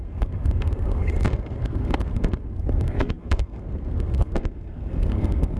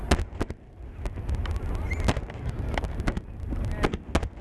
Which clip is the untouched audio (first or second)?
second